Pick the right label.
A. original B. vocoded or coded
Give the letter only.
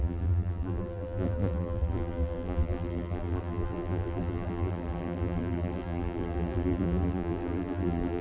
B